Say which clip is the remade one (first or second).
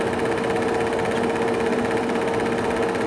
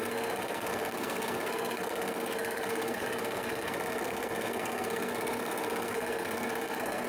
second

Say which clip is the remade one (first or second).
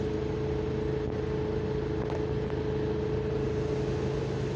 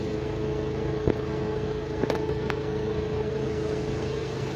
second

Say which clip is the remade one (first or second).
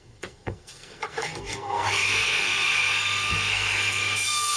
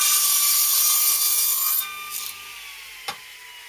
first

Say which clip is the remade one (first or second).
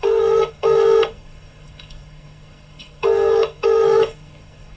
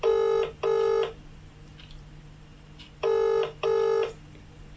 first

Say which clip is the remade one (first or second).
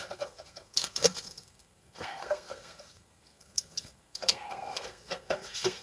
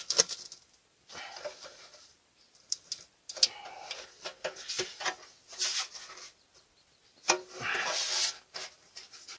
first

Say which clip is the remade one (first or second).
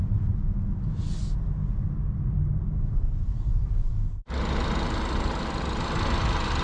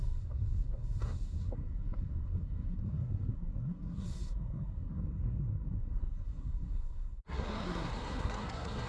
second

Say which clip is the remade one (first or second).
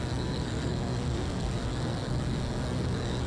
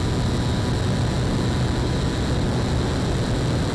first